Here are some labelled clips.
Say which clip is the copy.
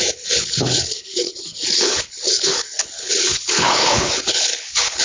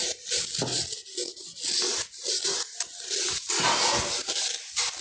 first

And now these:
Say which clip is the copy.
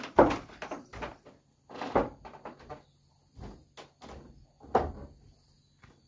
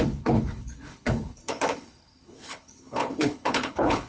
second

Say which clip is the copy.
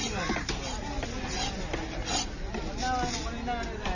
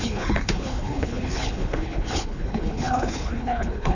second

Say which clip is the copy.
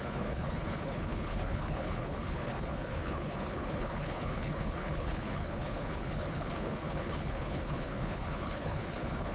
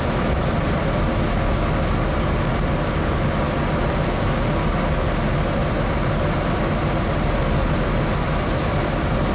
first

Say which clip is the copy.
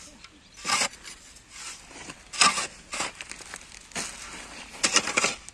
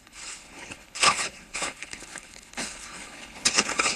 second